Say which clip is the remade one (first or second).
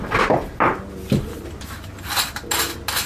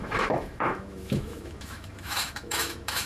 second